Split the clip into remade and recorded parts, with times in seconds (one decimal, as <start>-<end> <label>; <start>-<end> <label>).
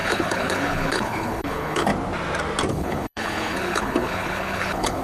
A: 0.0-1.9 remade; 1.9-2.7 recorded; 2.7-5.0 remade